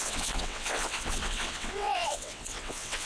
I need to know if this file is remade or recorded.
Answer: remade